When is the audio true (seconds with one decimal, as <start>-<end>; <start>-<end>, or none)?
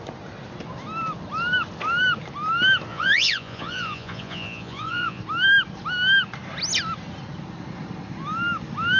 0.0-2.9; 5.2-9.0